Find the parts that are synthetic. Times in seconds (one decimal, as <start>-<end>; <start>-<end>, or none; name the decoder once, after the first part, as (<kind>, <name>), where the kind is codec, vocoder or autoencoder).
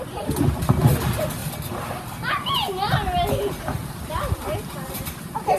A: none